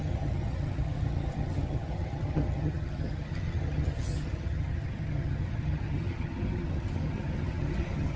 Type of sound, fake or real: fake